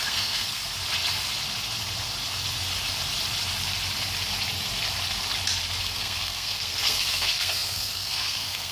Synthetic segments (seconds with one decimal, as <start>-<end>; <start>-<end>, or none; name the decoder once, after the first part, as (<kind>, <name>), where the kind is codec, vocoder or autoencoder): 0.0-0.6 (codec, SNAC); 5.8-8.7